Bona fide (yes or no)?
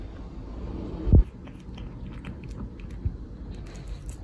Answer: yes